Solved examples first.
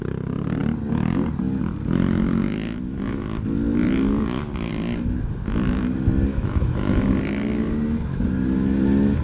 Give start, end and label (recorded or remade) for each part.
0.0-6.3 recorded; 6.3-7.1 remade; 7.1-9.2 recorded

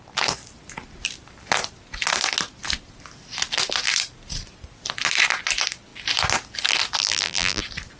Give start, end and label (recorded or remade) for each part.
0.0-7.0 recorded; 7.0-7.6 remade; 7.6-8.0 recorded

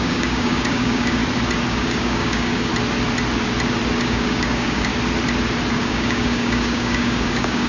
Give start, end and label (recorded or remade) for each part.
0.0-1.2 remade; 1.2-1.7 recorded; 1.7-2.7 remade; 2.7-4.0 recorded; 4.0-4.9 remade; 4.9-5.7 recorded; 5.7-7.7 remade